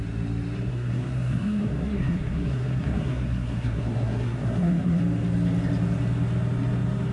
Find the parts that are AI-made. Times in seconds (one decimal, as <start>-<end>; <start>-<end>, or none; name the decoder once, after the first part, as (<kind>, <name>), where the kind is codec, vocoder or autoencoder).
0.7-5.0 (codec, SNAC)